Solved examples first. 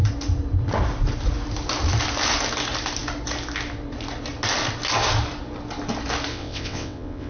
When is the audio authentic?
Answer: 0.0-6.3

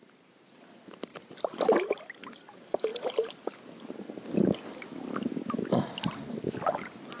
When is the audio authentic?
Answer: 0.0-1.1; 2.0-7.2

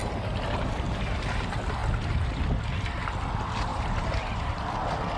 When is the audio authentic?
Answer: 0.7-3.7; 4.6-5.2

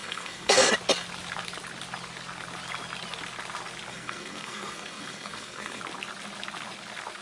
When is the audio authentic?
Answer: 0.7-3.9; 5.8-7.2

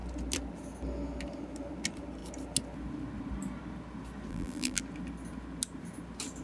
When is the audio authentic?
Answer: 0.0-4.3; 4.8-6.4

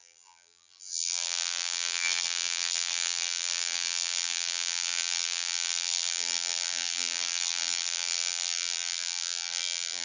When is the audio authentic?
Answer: none